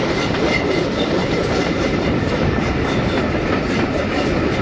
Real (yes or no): no